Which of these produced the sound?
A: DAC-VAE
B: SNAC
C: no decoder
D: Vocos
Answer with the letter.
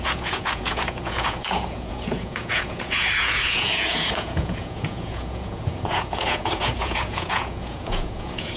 D